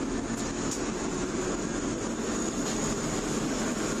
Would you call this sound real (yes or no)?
yes